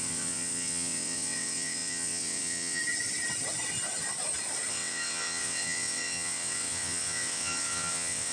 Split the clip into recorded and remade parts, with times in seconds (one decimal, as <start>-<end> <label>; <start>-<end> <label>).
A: 0.0-2.8 remade; 2.8-4.7 recorded; 4.7-8.3 remade